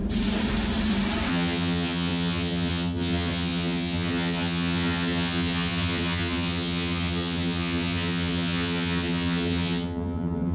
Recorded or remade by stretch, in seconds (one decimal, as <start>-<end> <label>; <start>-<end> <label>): 0.0-1.3 recorded; 1.3-10.5 remade